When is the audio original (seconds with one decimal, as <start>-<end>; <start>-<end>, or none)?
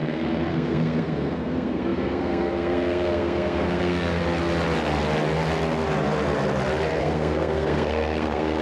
4.2-7.0